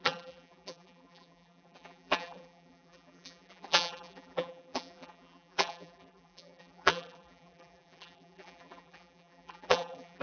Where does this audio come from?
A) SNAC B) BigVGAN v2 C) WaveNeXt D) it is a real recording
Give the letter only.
B